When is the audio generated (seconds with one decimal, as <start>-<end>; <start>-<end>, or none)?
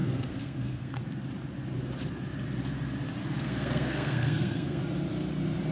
0.0-1.0; 3.2-4.8